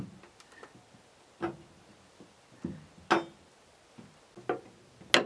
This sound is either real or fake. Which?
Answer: real